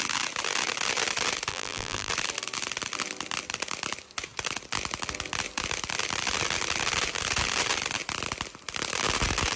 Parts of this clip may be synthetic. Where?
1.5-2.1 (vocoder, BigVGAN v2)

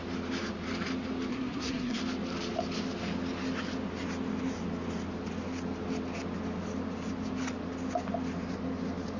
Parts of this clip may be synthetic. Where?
1.3-2.0 (codec, SNAC)

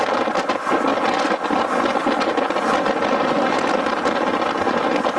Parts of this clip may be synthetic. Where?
none

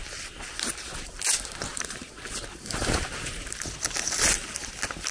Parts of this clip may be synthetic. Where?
none